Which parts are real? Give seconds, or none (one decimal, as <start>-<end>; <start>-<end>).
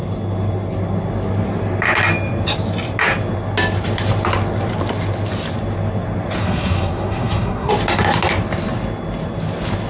0.0-6.4; 7.7-9.9